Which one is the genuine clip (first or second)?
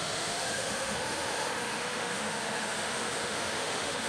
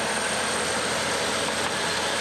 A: second